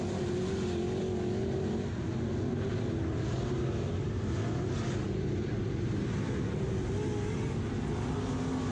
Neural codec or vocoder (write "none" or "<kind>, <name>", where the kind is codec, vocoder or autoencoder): none